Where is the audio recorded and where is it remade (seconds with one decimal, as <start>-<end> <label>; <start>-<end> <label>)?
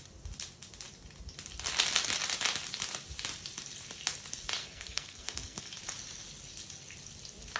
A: 0.0-4.6 recorded; 4.6-5.6 remade; 5.6-7.6 recorded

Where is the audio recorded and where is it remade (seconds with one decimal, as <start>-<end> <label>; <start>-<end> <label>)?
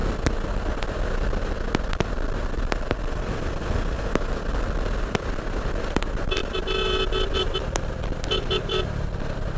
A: 0.0-5.0 recorded; 5.0-9.6 remade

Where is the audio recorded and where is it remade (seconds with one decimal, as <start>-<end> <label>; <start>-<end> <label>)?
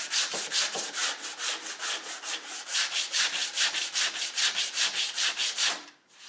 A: 0.0-1.0 remade; 1.0-1.7 recorded; 1.7-3.4 remade; 3.4-4.6 recorded; 4.6-6.3 remade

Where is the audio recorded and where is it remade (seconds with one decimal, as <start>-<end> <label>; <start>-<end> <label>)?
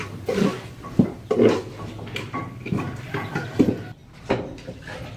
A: 0.0-5.2 recorded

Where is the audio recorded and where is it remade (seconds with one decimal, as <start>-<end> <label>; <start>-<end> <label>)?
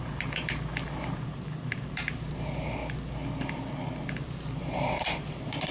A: 0.0-0.7 remade; 0.7-1.3 recorded; 1.3-2.8 remade; 2.8-4.1 recorded; 4.1-5.7 remade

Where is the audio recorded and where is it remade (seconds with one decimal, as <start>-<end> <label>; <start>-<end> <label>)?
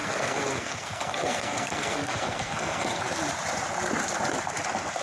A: 0.0-3.0 remade; 3.0-5.0 recorded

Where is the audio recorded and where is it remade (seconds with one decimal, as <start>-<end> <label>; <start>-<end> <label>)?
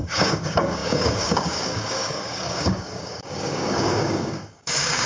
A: 0.0-5.1 remade